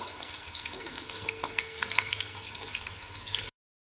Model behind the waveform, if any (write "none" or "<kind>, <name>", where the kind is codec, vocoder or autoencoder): codec, SNAC